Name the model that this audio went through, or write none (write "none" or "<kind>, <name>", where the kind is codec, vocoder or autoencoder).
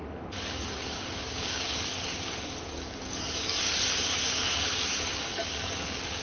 codec, DAC